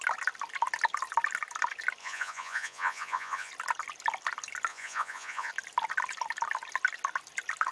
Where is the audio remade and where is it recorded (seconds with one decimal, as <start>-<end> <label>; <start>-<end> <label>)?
0.0-2.0 recorded; 2.0-3.5 remade; 3.5-4.7 recorded; 4.7-5.5 remade; 5.5-7.7 recorded